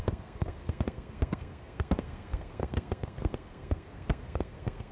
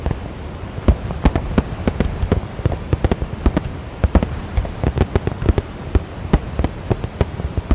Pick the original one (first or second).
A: second